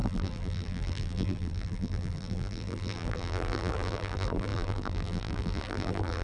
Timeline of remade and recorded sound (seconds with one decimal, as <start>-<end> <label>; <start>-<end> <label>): 0.0-6.2 remade